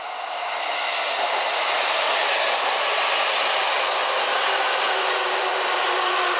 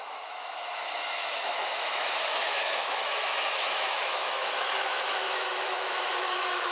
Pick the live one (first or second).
first